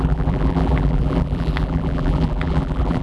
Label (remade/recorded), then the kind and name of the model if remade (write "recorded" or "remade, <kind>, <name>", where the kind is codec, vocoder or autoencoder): remade, vocoder, BigVGAN v2